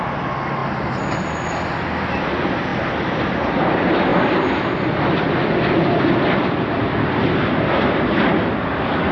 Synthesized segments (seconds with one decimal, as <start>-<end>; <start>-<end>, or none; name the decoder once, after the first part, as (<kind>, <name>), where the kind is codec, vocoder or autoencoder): none